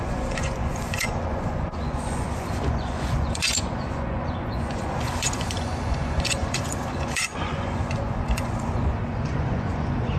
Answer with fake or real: fake